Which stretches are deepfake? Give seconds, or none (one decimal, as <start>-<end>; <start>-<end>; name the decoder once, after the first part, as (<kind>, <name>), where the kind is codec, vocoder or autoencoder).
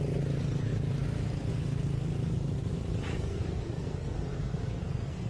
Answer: 3.1-5.3 (codec, SNAC)